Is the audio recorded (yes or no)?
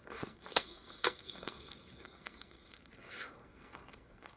no